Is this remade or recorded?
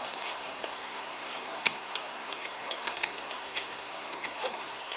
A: remade